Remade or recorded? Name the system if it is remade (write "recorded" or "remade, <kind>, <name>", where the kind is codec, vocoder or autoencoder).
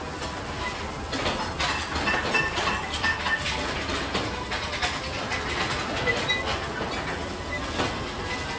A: recorded